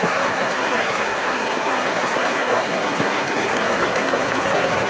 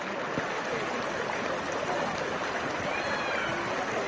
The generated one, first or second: first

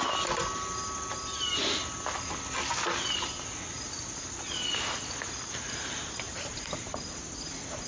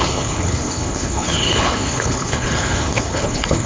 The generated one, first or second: second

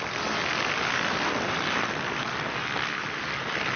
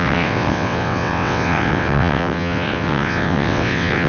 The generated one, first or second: second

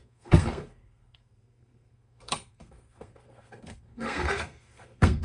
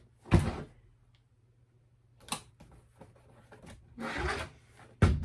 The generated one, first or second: first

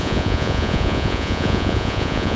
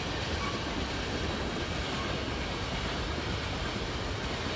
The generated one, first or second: first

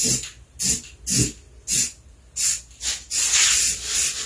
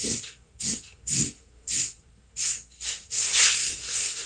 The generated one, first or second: second